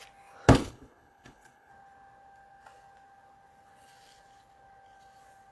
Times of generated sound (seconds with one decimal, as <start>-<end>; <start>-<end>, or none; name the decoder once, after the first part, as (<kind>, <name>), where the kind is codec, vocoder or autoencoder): 0.6-1.7 (codec, HILCodec)